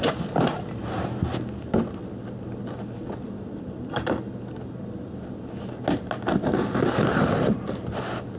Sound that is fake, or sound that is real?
real